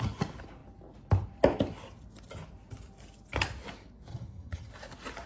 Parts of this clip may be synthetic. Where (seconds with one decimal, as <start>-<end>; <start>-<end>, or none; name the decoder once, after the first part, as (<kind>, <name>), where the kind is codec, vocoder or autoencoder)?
4.1-4.7 (vocoder, HiFi-GAN)